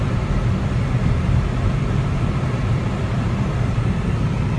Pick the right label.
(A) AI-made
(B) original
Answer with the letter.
B